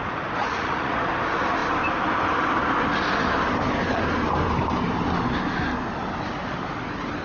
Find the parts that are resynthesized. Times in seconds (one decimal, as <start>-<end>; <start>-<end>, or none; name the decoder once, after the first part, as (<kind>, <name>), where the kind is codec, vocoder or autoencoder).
0.4-1.0 (vocoder, Vocos)